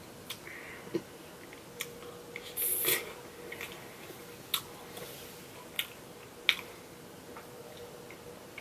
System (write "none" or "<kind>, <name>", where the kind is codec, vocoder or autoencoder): none